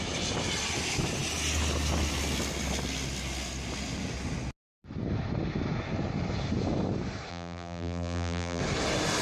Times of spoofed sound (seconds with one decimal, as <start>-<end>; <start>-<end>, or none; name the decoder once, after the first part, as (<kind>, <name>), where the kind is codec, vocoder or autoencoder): 7.3-8.6 (vocoder, BigVGAN v2)

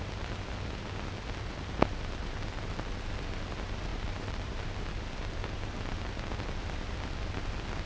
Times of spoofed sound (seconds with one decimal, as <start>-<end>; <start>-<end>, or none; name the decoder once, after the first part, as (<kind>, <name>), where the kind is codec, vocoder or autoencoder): 3.9-4.7 (vocoder, BigVGAN v2)

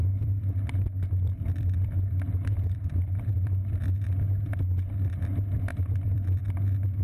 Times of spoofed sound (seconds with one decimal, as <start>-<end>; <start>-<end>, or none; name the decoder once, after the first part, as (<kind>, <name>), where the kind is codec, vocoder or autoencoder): 0.0-4.2 (vocoder, BigVGAN v2); 5.7-6.4

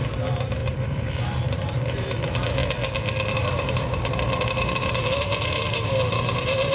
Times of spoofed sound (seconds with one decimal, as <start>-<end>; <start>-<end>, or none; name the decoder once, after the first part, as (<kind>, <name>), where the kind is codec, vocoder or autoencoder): 0.0-2.6 (vocoder, BigVGAN v2); 3.3-6.7

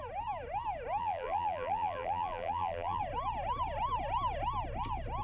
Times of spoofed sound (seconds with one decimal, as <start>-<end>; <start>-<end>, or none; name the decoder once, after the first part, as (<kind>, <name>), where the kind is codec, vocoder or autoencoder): 1.0-3.0 (vocoder, BigVGAN v2)